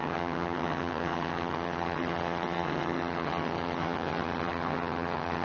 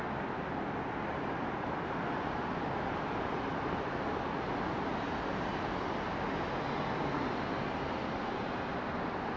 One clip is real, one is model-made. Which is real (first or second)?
second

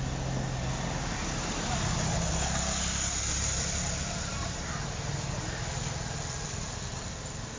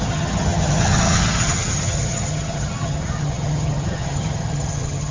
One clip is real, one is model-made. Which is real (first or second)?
first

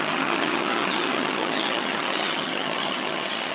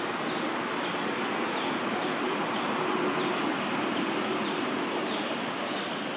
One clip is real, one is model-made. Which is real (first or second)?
second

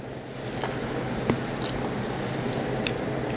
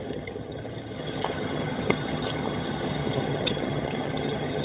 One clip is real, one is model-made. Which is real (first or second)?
first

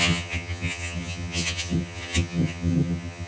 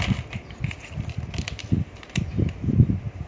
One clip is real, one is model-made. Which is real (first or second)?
second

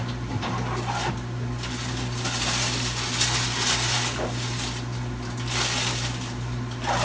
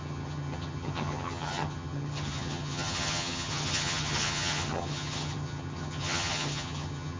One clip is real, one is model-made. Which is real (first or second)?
first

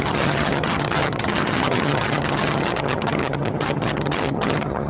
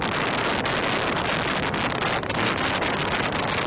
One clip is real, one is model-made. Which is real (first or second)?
second